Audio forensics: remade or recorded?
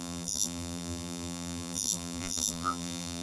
remade